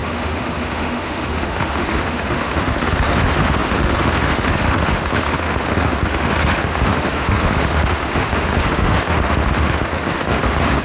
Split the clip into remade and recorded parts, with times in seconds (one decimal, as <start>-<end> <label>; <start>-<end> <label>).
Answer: 0.0-10.8 remade